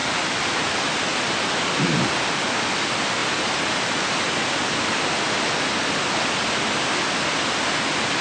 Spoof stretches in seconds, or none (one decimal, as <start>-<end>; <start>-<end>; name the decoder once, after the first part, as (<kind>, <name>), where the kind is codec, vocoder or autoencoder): none